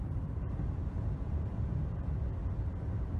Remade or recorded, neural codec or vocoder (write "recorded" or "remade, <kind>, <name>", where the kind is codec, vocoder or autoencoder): recorded